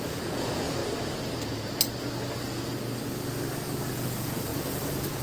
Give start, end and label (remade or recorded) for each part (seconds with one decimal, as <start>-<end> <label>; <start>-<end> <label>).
0.0-0.8 remade; 0.8-3.9 recorded; 3.9-5.2 remade